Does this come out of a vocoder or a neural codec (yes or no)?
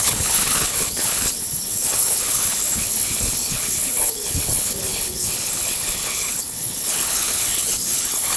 yes